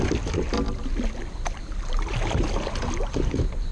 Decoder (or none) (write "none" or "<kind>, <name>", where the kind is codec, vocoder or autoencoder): none